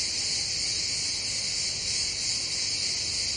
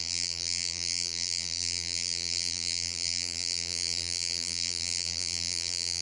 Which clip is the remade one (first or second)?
second